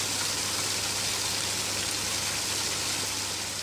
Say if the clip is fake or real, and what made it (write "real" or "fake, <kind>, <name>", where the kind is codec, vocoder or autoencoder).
real